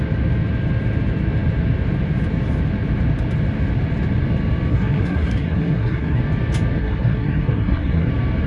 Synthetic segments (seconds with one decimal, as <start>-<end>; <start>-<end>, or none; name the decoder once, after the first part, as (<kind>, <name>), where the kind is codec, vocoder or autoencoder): 4.7-6.2 (codec, SNAC); 6.8-8.1